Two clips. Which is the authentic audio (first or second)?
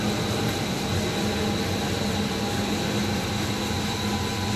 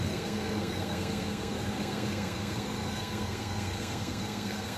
first